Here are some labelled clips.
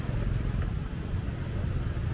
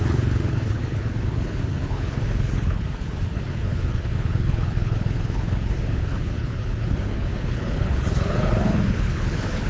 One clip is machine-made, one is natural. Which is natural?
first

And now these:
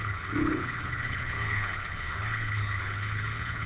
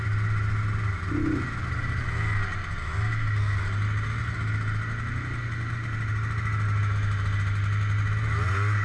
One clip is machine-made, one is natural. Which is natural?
second